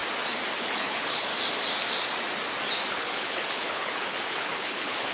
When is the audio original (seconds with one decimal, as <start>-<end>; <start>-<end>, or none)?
0.0-0.6; 1.3-2.9